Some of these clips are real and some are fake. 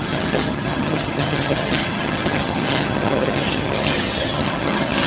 fake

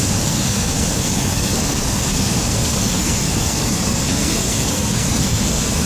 fake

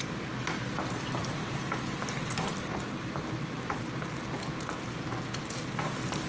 real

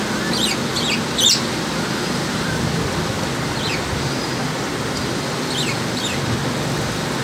real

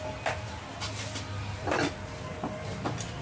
real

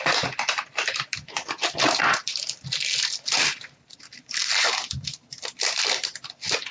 real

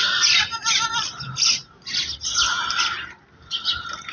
real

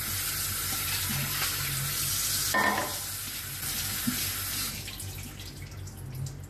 real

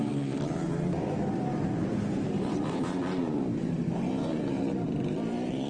fake